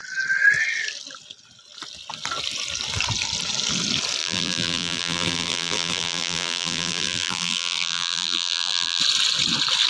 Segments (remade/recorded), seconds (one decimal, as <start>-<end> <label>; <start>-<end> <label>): 0.0-4.2 recorded; 4.2-9.0 remade; 9.0-9.9 recorded